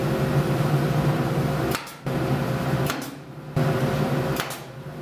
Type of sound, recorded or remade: recorded